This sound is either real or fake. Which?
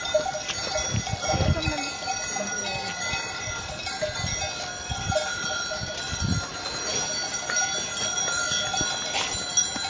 real